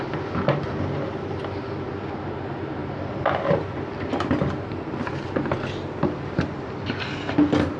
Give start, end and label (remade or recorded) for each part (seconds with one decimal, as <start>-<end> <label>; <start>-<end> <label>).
0.0-7.8 recorded